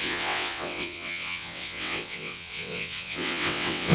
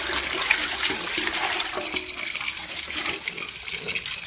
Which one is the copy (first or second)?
first